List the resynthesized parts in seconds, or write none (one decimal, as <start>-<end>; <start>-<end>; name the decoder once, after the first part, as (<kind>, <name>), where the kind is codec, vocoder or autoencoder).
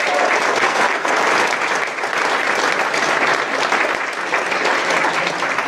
0.5-1.2 (codec, SNAC)